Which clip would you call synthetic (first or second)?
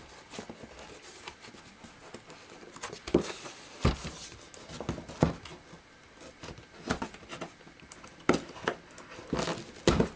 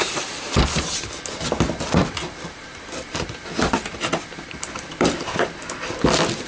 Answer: second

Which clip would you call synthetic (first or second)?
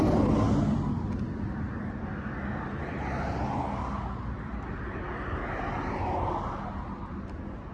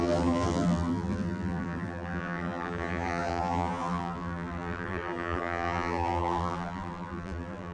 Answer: second